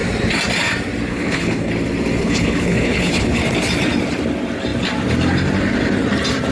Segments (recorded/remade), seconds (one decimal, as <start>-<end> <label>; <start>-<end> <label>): 0.0-1.1 recorded; 1.1-1.7 remade; 1.7-2.2 recorded; 2.2-3.4 remade; 3.4-6.5 recorded